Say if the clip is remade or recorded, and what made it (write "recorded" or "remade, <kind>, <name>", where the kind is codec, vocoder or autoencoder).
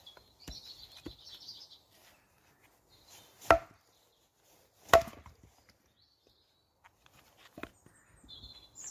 recorded